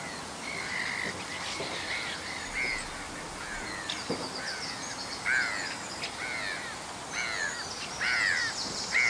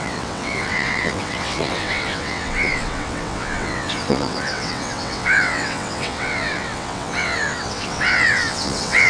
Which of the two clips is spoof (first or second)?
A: second